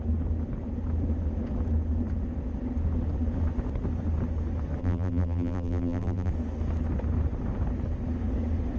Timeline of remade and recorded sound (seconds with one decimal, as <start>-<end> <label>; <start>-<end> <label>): 0.0-4.8 recorded; 4.8-6.3 remade; 6.3-8.8 recorded